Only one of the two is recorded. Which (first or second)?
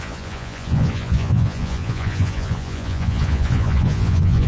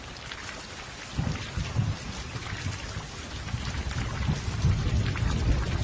second